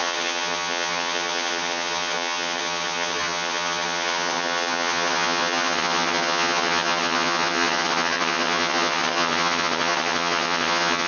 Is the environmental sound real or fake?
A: fake